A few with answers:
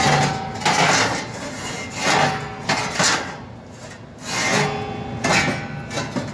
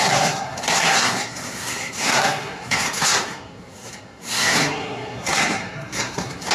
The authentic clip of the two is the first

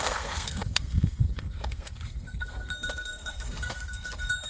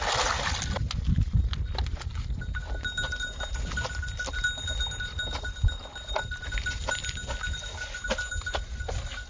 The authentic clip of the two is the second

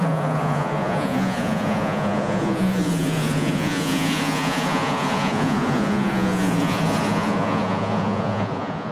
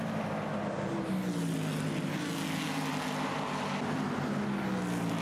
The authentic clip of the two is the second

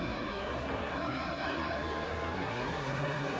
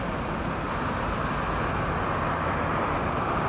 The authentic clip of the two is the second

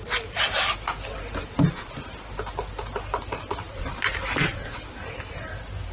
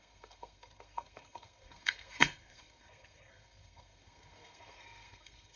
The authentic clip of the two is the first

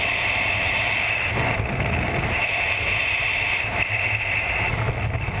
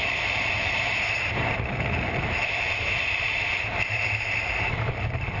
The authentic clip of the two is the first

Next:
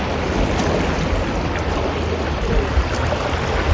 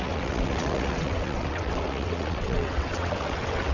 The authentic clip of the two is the first